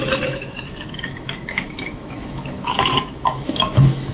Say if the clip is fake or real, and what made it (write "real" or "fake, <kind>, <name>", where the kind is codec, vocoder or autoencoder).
fake, autoencoder, DAC-VAE